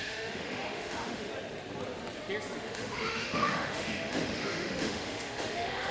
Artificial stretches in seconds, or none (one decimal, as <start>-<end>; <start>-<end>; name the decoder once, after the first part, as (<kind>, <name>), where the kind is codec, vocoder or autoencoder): 0.0-1.3 (autoencoder, DAC-VAE); 2.6-5.9